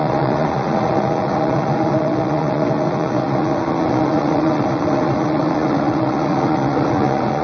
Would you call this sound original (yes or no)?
no